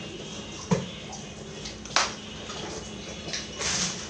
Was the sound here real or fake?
real